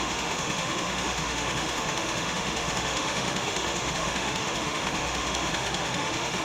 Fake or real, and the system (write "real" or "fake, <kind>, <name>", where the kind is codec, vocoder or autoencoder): fake, autoencoder, DAC-VAE